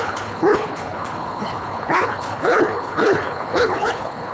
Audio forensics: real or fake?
fake